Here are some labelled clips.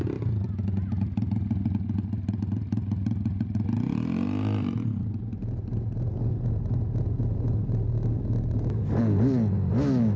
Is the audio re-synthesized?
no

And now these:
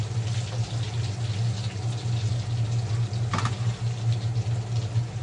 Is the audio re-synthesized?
no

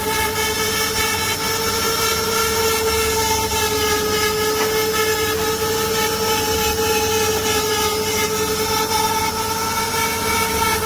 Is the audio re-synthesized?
no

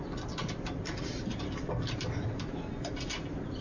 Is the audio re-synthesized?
no